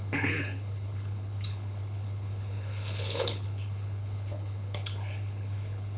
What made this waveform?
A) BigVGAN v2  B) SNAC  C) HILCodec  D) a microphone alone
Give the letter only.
C